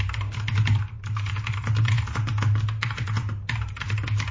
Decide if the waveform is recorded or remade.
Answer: remade